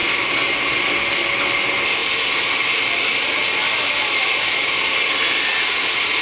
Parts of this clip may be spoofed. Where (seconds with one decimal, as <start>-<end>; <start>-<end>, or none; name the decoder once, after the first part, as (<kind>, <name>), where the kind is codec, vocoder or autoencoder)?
none